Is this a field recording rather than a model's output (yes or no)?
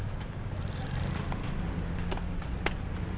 yes